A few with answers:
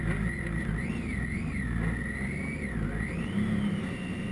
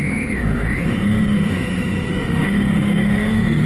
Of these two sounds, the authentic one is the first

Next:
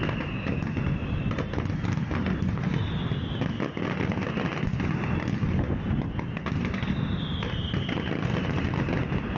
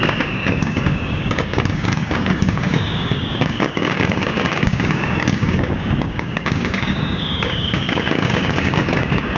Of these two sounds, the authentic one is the first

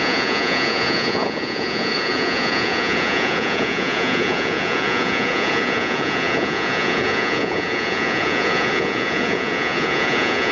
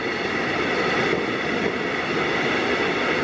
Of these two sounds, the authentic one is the second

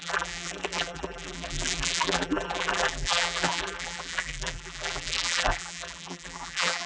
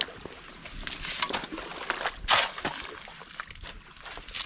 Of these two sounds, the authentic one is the second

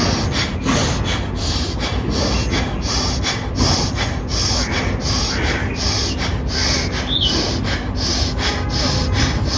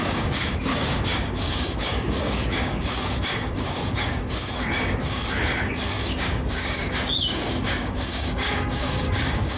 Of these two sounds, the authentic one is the first